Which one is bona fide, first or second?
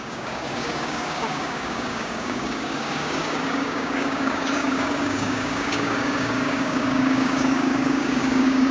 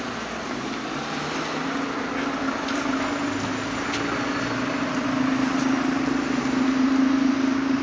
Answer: second